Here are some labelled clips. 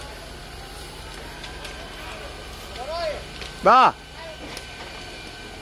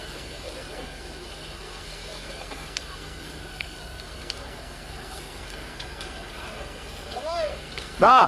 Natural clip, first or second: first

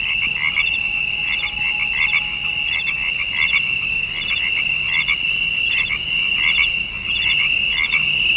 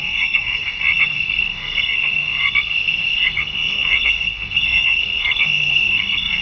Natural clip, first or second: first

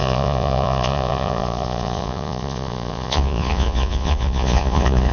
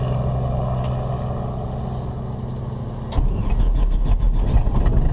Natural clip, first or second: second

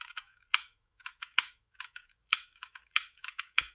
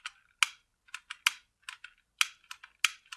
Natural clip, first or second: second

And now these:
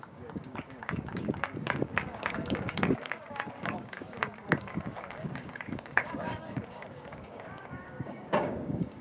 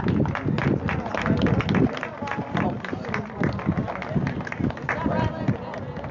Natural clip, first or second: second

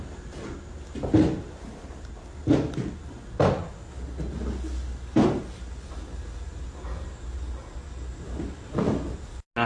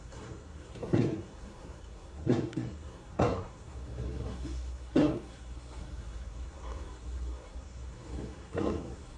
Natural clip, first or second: first